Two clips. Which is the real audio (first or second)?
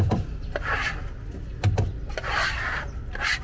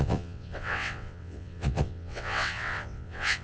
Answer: first